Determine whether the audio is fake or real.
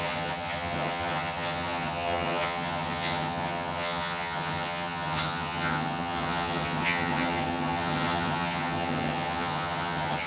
fake